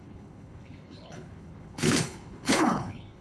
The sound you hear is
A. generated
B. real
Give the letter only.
A